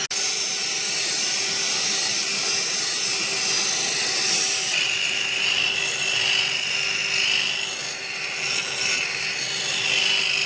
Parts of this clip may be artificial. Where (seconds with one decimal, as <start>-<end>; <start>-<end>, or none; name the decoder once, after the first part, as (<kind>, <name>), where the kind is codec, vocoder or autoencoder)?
none